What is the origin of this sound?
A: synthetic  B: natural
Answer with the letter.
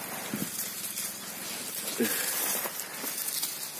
B